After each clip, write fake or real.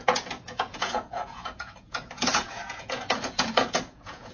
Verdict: fake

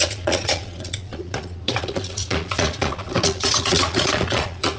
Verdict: fake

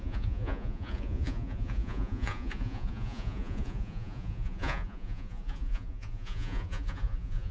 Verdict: fake